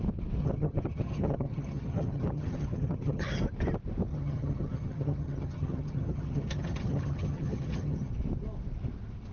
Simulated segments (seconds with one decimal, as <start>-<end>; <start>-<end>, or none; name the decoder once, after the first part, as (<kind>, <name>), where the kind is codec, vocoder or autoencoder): 0.4-3.4 (vocoder, HiFi-GAN); 4.1-8.1